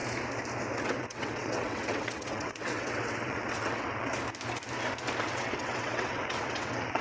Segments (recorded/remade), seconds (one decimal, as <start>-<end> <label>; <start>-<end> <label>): 0.0-0.8 recorded; 0.8-4.1 remade; 4.1-5.2 recorded; 5.2-7.0 remade